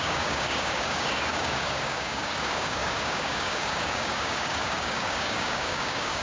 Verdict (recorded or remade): remade